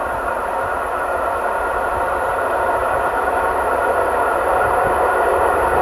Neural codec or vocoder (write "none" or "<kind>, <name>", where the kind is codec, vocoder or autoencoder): vocoder, BigVGAN v2